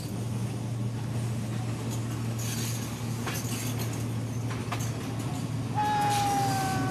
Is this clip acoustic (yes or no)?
yes